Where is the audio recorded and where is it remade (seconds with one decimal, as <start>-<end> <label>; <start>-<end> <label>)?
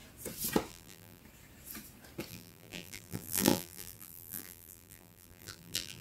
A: 0.0-0.7 recorded; 0.7-1.2 remade; 1.2-2.3 recorded; 2.3-6.0 remade